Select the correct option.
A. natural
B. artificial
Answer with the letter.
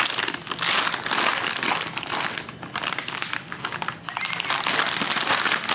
A